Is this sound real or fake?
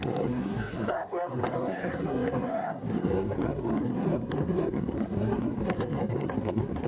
fake